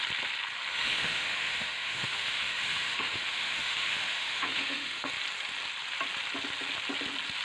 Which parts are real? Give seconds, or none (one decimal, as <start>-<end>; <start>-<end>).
0.0-0.7; 5.1-7.4